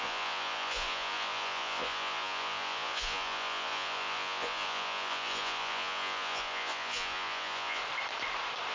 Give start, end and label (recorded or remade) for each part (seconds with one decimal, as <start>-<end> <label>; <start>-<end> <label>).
0.0-7.8 remade; 7.8-8.7 recorded